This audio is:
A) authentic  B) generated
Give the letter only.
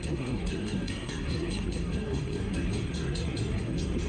B